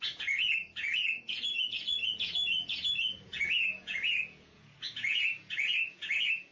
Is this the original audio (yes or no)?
no